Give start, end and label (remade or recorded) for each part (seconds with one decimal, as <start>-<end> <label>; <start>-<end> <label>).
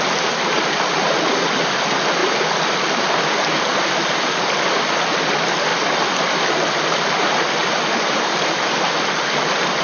0.0-7.6 recorded; 7.6-8.3 remade; 8.3-9.8 recorded